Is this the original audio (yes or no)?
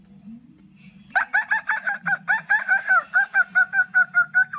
yes